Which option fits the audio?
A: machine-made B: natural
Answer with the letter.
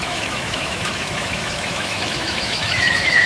A